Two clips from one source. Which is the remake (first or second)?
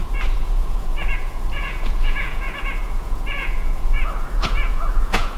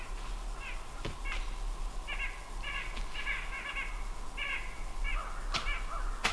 first